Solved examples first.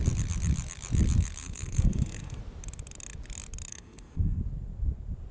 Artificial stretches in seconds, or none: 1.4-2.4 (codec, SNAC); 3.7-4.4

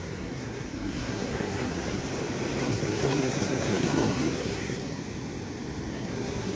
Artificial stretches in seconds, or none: 0.0-2.0 (codec, SNAC); 2.6-5.0; 5.9-6.6

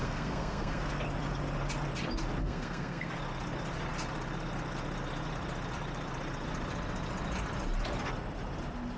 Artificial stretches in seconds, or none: 0.0-0.8 (codec, SNAC); 2.4-3.1

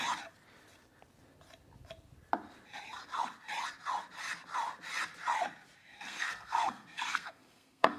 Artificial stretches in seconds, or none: 5.8-8.0 (codec, SNAC)

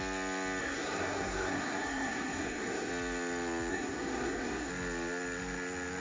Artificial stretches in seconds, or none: 0.6-2.9 (codec, SNAC); 3.7-4.7

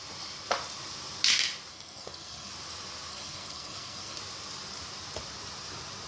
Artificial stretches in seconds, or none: 1.7-2.5 (codec, SNAC); 3.1-4.2

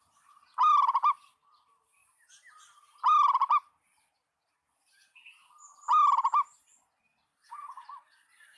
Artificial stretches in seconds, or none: none